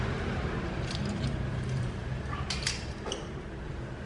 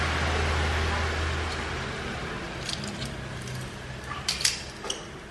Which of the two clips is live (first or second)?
second